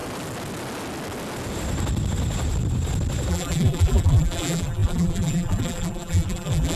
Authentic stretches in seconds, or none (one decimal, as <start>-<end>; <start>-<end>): 0.0-3.3